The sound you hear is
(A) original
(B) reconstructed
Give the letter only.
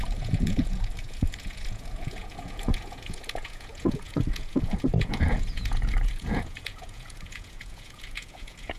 B